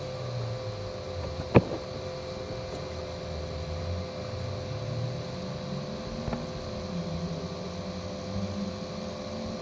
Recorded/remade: recorded